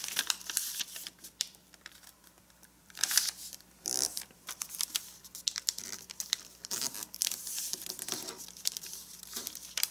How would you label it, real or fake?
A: fake